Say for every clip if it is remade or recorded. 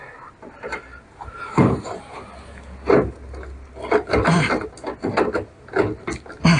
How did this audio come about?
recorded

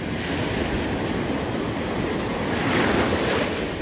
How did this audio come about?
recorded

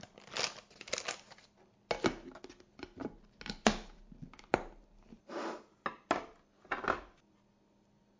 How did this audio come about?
recorded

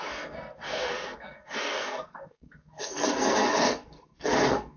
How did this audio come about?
remade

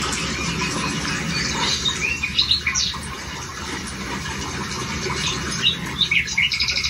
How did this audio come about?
recorded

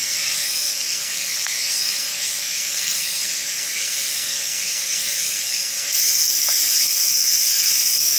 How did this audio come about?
remade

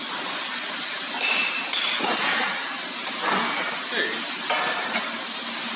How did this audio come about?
recorded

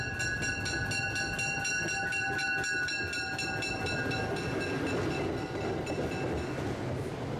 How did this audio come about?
recorded